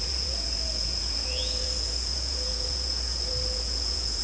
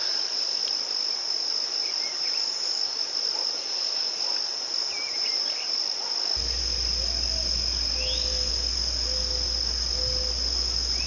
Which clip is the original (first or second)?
second